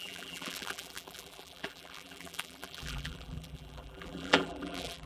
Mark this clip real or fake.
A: fake